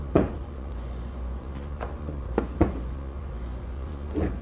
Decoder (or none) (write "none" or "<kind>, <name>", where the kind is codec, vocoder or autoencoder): vocoder, Vocos